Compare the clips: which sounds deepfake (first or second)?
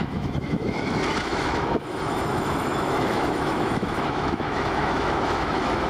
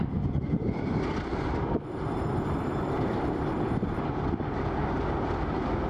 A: first